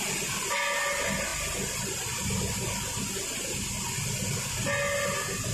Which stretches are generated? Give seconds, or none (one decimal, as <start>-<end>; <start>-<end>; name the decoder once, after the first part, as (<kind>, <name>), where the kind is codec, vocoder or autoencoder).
none